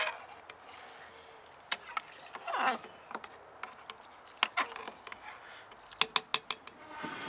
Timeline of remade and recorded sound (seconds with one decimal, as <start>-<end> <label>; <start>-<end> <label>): 0.0-7.3 recorded